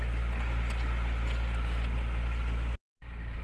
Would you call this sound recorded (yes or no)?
yes